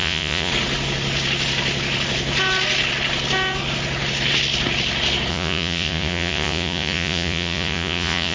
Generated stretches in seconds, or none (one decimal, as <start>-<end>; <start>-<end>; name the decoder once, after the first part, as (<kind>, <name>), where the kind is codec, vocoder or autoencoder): 0.0-0.5 (vocoder, Vocos); 5.3-8.3